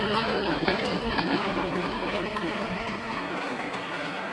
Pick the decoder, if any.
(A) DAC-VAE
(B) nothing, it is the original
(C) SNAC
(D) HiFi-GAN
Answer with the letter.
C